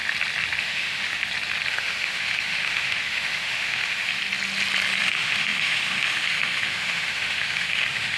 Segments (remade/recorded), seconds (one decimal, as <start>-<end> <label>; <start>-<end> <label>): 0.0-0.6 recorded; 0.6-1.2 remade; 1.2-1.7 recorded; 1.7-4.2 remade; 4.2-5.0 recorded; 5.0-8.2 remade